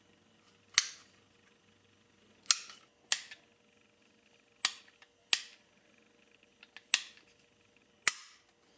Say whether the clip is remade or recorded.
recorded